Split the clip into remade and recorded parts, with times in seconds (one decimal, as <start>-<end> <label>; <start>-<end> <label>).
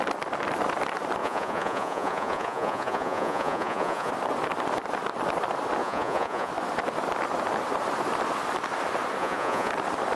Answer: 0.0-1.2 recorded; 1.2-4.1 remade; 4.1-5.8 recorded; 5.8-6.5 remade; 6.5-9.2 recorded; 9.2-9.7 remade; 9.7-10.2 recorded